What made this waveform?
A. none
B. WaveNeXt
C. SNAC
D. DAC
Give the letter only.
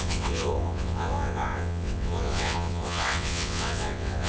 B